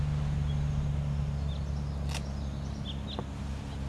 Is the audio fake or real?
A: real